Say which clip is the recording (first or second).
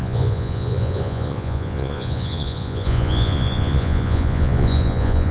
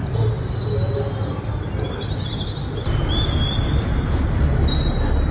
second